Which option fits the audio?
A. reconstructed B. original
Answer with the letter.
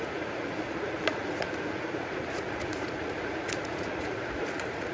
A